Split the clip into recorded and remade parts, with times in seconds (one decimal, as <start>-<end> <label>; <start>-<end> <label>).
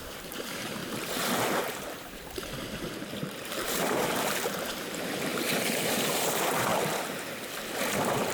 0.0-0.8 remade; 0.8-1.6 recorded; 1.6-6.7 remade; 6.7-8.3 recorded